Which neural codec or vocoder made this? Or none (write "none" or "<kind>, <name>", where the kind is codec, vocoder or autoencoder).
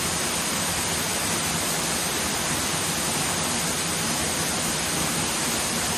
none